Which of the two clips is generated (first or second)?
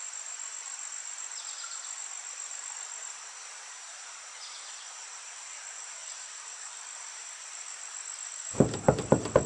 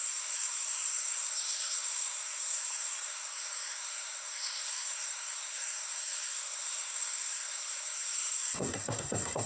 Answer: second